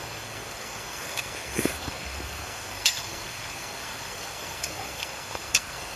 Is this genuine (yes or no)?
no